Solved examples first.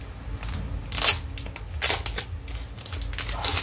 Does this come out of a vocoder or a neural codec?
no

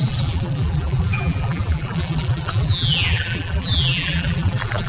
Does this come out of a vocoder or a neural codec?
yes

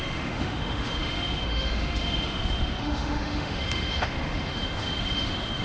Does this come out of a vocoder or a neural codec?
yes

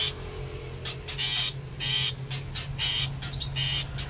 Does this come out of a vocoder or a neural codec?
no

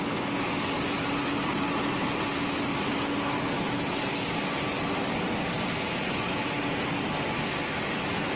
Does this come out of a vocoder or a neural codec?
no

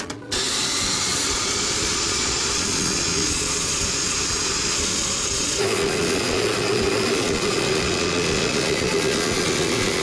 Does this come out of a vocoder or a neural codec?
yes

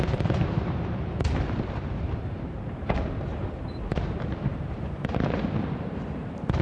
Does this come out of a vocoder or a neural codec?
yes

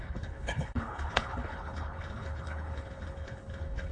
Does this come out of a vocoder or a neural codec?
yes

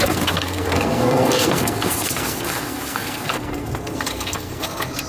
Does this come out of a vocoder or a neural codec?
yes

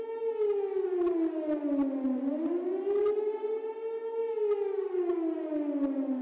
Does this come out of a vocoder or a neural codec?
no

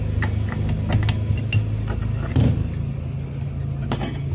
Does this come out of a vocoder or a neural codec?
no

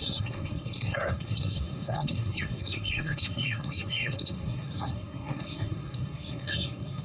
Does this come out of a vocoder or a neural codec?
yes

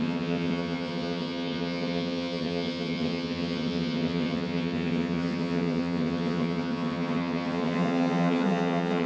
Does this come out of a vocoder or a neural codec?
yes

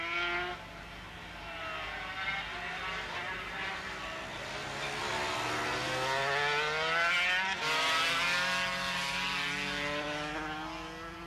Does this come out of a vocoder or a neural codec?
no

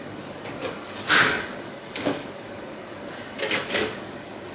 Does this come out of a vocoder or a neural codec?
yes